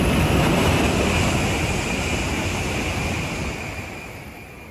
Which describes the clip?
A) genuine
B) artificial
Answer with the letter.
A